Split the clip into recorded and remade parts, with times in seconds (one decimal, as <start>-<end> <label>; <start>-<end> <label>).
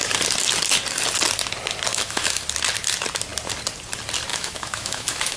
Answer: 0.0-1.9 recorded; 1.9-2.4 remade; 2.4-4.3 recorded; 4.3-5.4 remade